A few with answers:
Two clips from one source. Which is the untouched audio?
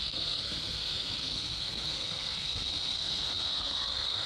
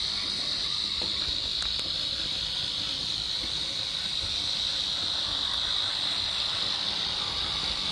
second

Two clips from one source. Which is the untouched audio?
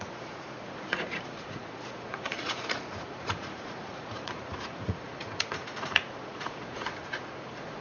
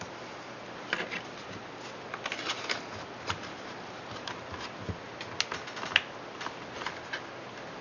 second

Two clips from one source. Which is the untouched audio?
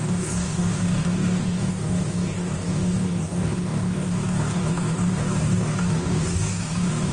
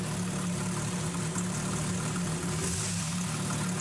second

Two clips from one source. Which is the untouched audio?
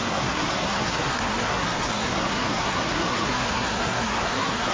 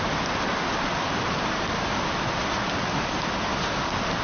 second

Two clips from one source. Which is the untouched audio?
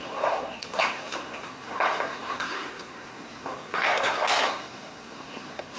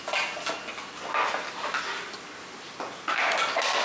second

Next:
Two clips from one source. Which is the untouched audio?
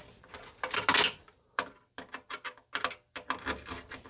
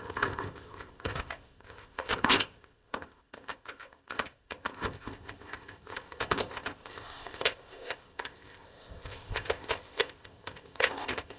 first